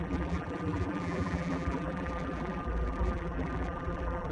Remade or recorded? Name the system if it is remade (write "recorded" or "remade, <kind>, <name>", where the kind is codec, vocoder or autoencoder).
remade, vocoder, BigVGAN v2